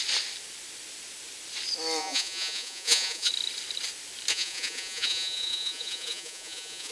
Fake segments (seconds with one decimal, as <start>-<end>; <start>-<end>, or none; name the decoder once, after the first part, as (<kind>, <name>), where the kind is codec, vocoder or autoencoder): 2.0-3.3 (vocoder, Vocos); 4.3-6.9